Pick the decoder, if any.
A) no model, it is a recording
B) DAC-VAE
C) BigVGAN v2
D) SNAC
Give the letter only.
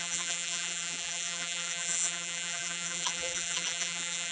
C